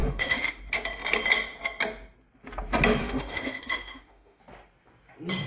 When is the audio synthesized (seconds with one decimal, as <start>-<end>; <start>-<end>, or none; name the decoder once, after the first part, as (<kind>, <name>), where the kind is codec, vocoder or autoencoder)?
0.0-0.6 (autoencoder, DAC-VAE); 3.0-4.4